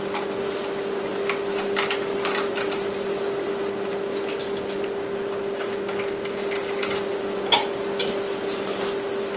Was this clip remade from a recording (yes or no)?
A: no